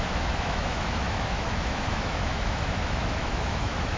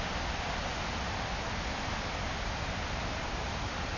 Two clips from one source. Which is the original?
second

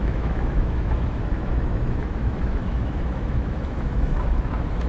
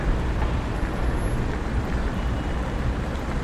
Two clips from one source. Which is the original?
second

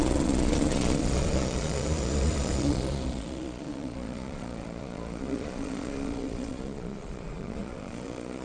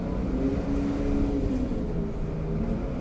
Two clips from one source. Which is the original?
second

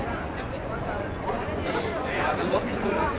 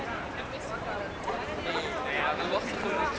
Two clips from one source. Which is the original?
second